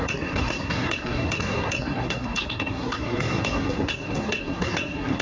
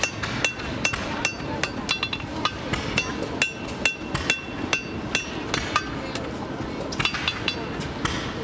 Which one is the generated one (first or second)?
first